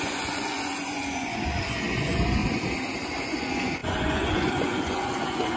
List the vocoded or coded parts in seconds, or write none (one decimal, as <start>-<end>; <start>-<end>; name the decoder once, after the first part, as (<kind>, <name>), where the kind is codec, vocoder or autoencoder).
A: 0.0-2.4 (vocoder, Vocos); 3.2-5.6